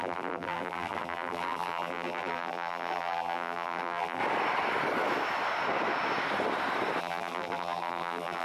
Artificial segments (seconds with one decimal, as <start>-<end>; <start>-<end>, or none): 0.0-4.2; 7.0-8.4